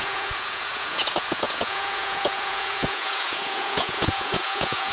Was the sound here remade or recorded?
remade